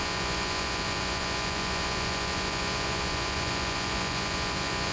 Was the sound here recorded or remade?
remade